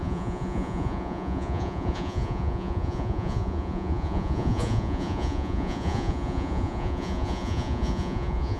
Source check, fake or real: fake